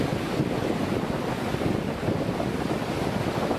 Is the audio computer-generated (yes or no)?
no